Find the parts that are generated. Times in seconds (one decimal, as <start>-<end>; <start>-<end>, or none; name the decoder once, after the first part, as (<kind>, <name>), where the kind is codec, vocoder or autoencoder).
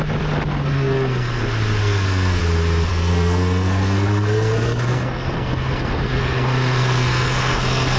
0.5-1.4 (codec, SNAC); 1.8-2.4; 2.9-8.0